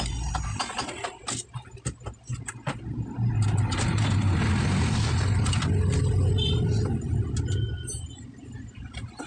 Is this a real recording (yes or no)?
yes